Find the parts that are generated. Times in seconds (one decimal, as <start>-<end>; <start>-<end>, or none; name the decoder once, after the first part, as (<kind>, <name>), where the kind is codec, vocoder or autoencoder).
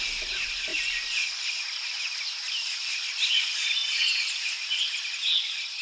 none